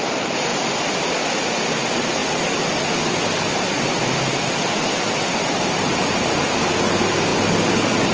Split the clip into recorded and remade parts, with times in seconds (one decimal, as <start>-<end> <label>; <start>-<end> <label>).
0.0-8.1 recorded